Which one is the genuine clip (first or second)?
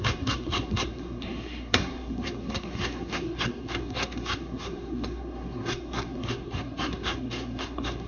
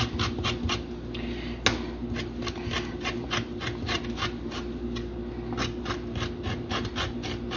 second